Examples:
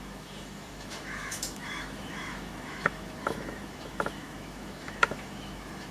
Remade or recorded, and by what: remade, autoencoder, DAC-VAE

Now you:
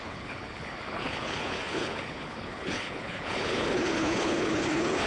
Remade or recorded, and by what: remade, codec, HILCodec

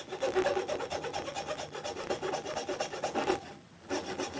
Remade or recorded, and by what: recorded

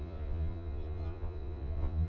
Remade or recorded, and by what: remade, vocoder, Vocos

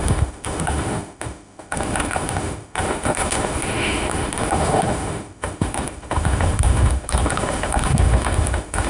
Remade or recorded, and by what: remade, autoencoder, DAC-VAE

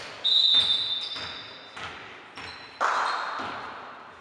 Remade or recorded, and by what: recorded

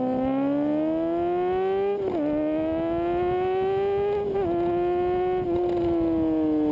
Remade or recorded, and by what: recorded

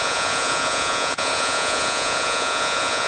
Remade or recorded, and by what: remade, vocoder, Vocos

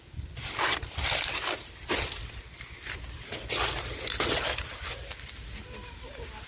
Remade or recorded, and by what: recorded